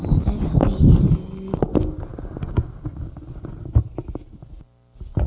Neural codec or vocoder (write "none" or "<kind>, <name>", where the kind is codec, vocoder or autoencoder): none